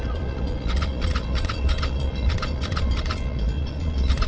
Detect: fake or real fake